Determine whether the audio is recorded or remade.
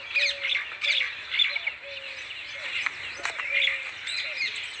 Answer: recorded